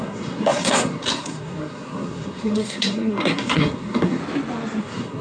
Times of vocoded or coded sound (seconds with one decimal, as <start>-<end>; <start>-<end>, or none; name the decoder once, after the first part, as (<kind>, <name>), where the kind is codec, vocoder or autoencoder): 0.0-4.2 (codec, SNAC); 4.8-5.2

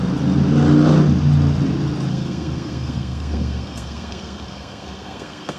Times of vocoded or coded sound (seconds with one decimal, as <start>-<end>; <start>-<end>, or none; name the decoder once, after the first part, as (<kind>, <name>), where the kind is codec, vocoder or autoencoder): 2.1-5.6 (codec, SNAC)

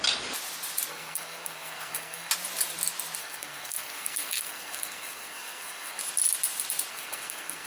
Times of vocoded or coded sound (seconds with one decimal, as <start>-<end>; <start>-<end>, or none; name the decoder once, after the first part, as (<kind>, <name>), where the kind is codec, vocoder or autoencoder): 0.9-2.3 (codec, SNAC); 3.2-6.0; 6.9-7.7

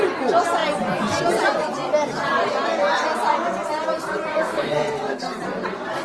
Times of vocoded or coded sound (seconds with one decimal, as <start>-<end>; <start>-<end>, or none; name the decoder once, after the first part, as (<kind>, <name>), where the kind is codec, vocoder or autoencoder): 4.3-5.4 (codec, SNAC)

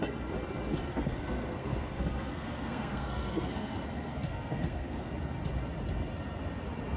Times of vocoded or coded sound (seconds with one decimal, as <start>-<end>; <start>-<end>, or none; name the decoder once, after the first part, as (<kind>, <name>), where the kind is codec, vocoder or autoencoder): 0.9-5.1 (codec, SNAC)